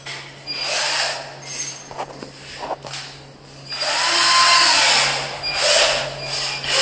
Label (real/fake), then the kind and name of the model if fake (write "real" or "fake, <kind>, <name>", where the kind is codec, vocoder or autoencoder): real